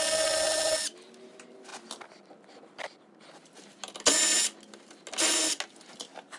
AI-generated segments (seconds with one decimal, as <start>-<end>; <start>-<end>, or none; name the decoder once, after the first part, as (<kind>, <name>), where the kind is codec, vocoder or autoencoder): none